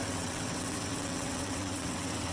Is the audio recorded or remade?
remade